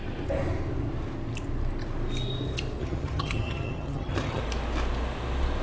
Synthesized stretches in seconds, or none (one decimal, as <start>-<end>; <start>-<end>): 2.8-4.4